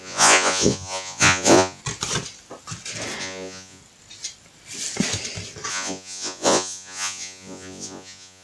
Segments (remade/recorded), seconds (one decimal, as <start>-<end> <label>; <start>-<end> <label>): 0.0-1.8 remade; 1.8-3.2 recorded; 3.2-3.8 remade; 3.8-5.7 recorded; 5.7-8.4 remade